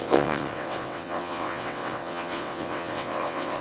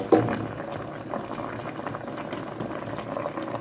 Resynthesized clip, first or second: first